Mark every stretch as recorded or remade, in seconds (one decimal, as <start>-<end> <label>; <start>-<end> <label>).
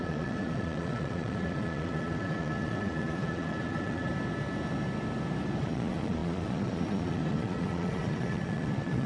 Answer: 0.0-4.1 remade; 4.1-5.6 recorded; 5.6-9.1 remade